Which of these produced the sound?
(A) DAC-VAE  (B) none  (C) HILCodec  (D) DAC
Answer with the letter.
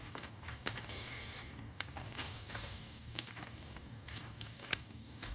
D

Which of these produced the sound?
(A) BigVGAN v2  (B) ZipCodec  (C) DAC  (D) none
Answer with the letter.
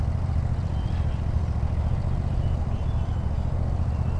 D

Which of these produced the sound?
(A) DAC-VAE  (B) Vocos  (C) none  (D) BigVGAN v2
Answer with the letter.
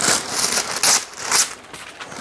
C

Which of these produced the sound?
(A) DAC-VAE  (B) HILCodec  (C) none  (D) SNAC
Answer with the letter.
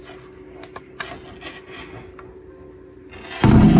C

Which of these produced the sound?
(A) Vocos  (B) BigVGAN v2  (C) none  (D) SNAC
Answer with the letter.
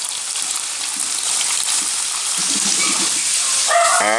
C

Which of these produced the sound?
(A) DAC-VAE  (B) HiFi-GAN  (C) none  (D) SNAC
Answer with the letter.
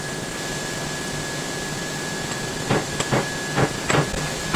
C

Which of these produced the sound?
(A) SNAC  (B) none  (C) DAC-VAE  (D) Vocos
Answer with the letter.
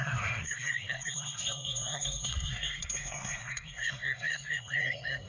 A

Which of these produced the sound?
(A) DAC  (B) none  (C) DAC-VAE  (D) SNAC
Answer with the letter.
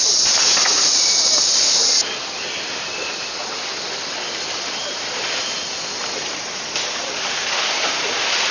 B